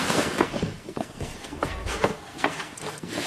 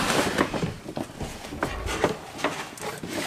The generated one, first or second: first